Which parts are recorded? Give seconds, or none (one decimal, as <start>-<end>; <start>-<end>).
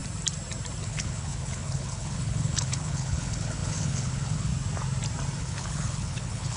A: 0.0-0.8; 4.5-5.4